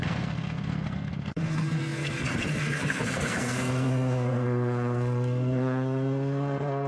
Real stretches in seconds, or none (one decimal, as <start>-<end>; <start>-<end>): none